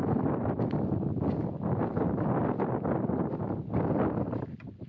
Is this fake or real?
real